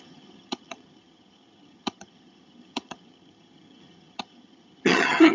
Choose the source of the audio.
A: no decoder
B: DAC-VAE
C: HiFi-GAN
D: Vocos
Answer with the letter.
C